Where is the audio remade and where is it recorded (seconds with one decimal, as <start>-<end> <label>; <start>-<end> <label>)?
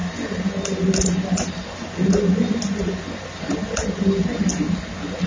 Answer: 0.0-5.3 recorded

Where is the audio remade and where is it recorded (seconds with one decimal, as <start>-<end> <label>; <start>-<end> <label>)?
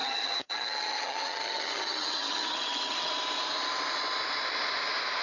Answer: 0.0-3.1 remade; 3.1-5.2 recorded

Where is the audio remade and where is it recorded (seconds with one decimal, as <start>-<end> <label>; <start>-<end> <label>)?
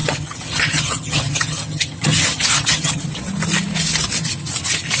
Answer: 0.0-3.0 remade; 3.0-5.0 recorded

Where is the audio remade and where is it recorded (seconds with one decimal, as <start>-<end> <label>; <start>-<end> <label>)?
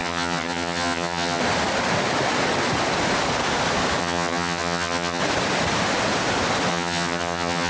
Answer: 0.0-1.4 remade; 1.4-4.0 recorded; 4.0-5.2 remade; 5.2-6.7 recorded; 6.7-7.7 remade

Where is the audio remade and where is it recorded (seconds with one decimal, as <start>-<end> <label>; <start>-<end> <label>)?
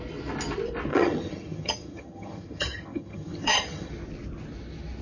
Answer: 0.0-0.9 recorded; 0.9-3.9 remade; 3.9-5.0 recorded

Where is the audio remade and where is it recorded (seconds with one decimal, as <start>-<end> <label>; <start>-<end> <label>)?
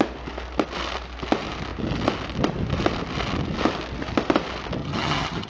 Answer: 0.0-4.8 recorded; 4.8-5.5 remade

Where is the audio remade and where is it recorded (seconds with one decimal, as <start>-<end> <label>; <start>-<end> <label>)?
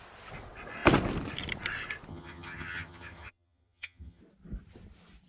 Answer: 0.0-2.1 recorded; 2.1-4.2 remade; 4.2-5.3 recorded